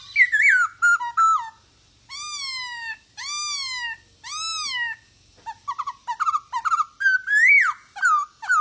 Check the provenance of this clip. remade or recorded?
recorded